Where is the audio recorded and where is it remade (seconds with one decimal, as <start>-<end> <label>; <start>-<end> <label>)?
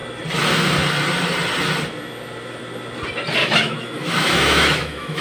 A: 0.0-3.4 recorded; 3.4-5.2 remade